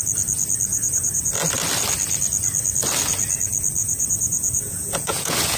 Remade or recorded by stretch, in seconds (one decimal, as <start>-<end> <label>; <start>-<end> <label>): 0.0-0.7 recorded; 0.7-1.3 remade; 1.3-3.8 recorded; 3.8-5.6 remade